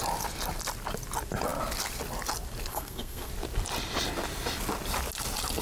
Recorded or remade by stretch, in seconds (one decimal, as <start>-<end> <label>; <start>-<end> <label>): 0.0-2.7 recorded; 2.7-3.3 remade; 3.3-5.6 recorded